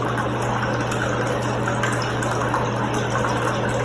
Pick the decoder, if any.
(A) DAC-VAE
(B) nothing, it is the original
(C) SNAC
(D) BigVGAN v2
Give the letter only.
B